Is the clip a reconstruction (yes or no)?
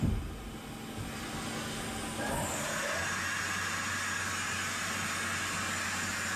no